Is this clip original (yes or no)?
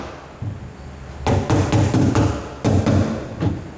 yes